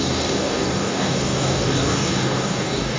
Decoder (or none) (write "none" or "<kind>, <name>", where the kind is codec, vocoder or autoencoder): codec, DAC